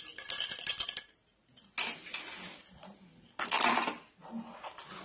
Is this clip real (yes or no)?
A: yes